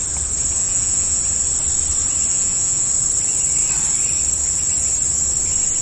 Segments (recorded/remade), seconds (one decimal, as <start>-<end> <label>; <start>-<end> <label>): 0.0-0.6 recorded; 0.6-1.2 remade; 1.2-2.3 recorded; 2.3-2.9 remade; 2.9-5.8 recorded